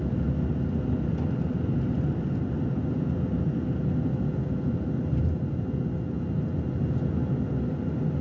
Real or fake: real